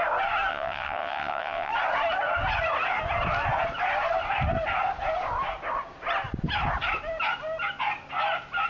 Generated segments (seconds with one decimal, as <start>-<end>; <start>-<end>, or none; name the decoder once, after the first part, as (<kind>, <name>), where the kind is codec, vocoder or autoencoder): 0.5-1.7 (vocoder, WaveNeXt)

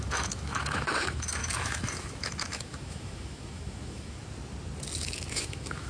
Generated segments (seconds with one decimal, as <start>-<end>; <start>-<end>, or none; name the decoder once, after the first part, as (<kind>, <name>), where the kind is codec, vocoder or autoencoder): 0.0-4.2 (autoencoder, DAC-VAE); 5.0-5.9

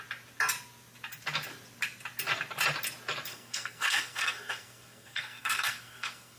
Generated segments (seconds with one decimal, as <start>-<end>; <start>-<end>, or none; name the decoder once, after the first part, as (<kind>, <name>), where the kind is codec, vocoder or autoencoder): 3.3-6.4 (codec, SNAC)